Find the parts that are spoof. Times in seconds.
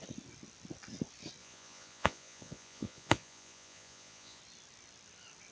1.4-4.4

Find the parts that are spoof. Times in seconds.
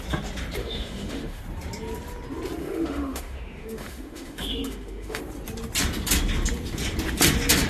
0.6-1.4; 2.6-5.2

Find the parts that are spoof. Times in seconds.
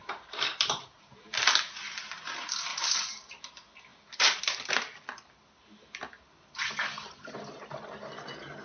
0.0-1.4; 2.7-3.3; 3.9-4.7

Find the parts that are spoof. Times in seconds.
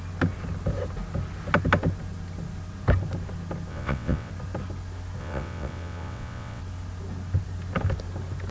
3.7-4.3; 5.2-6.6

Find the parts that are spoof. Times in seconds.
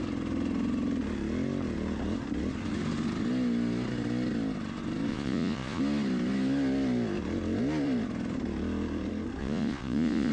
5.1-5.8; 9.4-10.3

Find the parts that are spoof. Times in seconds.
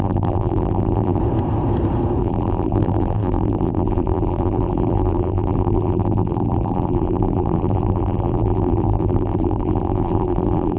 0.0-1.2; 2.2-10.8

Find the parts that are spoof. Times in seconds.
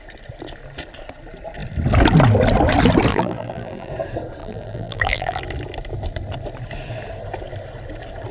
3.1-3.9; 4.4-5.4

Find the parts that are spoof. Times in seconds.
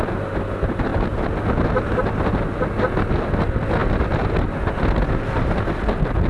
none